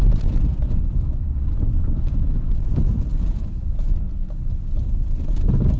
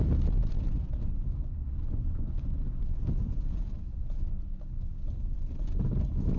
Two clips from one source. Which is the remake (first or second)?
first